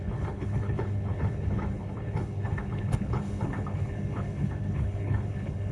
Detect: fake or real fake